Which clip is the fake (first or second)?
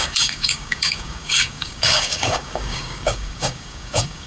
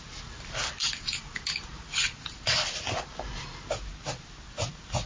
first